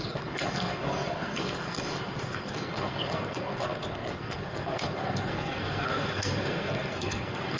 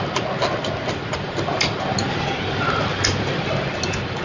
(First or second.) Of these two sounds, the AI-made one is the first